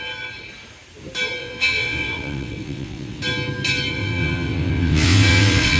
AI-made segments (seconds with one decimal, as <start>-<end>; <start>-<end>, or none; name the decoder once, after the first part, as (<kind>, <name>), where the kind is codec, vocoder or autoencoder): 1.4-3.2 (vocoder, WaveNeXt); 3.9-5.8